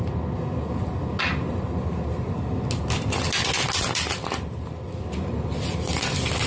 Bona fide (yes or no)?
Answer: yes